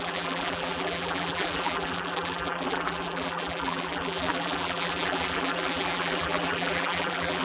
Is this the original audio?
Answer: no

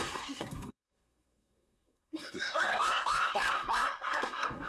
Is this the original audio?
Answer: no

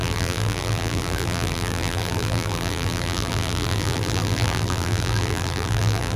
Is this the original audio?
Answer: no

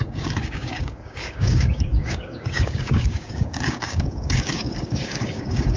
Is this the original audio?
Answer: no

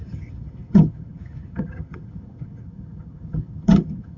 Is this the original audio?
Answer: no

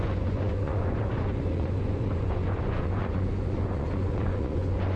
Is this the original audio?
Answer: no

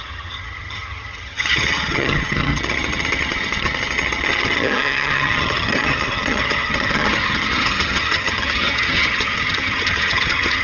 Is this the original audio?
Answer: no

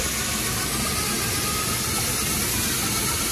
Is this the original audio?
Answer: yes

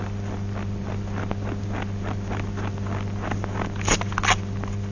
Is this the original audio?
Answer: yes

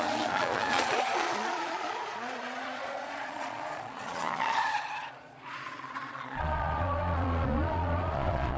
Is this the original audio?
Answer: no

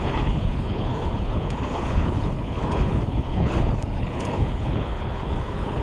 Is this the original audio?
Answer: no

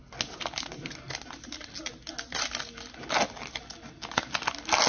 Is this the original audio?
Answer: yes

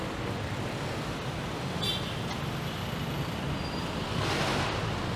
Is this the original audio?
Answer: yes